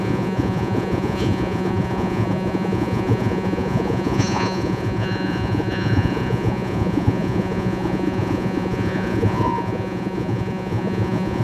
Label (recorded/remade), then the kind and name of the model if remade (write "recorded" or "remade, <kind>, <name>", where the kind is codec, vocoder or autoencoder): remade, vocoder, Vocos